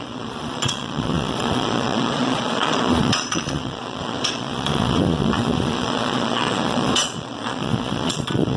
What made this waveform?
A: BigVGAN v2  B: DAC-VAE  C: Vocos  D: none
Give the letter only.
C